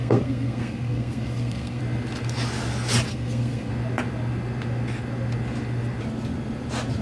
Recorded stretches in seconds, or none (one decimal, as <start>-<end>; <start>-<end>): 1.8-3.1; 3.7-7.0